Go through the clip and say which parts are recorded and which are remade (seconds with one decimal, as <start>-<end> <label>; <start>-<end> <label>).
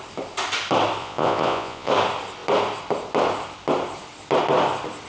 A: 0.0-1.0 recorded; 1.0-1.9 remade; 1.9-5.1 recorded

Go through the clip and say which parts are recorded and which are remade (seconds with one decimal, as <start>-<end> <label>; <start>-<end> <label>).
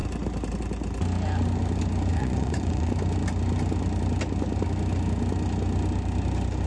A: 0.0-2.1 recorded; 2.1-2.9 remade; 2.9-6.7 recorded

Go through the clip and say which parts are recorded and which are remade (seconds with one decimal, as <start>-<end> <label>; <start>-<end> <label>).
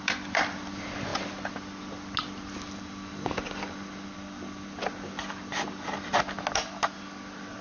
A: 0.0-7.6 recorded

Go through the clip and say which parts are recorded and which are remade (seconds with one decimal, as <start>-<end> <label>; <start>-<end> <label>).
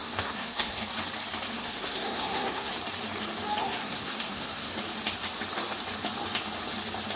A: 0.0-0.8 remade; 0.8-1.5 recorded; 1.5-2.7 remade; 2.7-3.6 recorded; 3.6-4.7 remade; 4.7-7.2 recorded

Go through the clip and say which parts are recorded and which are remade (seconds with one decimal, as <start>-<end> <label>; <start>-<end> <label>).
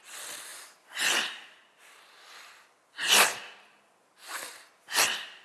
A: 0.0-5.4 recorded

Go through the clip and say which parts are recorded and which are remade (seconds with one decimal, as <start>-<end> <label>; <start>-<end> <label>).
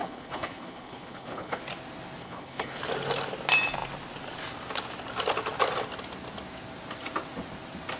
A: 0.0-1.6 remade; 1.6-2.2 recorded; 2.2-2.8 remade; 2.8-8.0 recorded